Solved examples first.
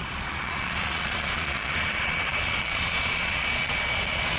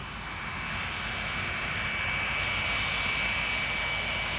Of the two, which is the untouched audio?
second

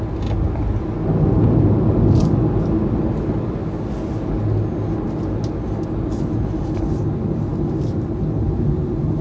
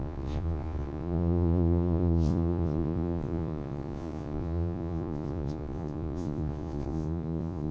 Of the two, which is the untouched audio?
first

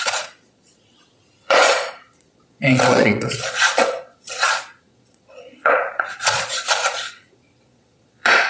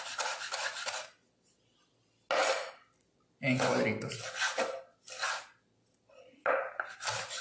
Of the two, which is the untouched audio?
second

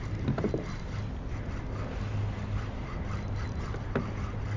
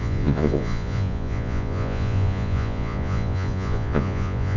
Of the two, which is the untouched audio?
first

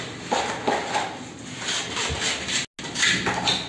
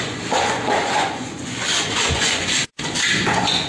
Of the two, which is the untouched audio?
first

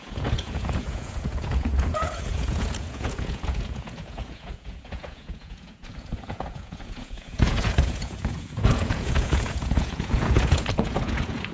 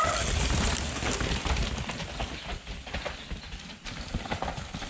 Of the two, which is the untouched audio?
second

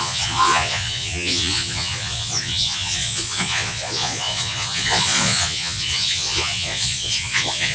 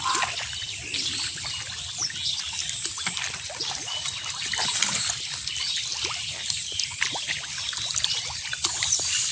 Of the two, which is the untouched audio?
second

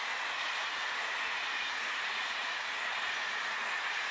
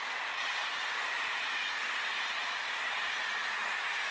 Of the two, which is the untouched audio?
second